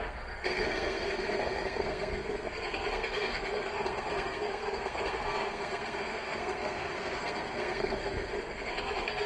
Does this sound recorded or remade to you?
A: remade